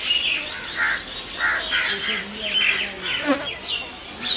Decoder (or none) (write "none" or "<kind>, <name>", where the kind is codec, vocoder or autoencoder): none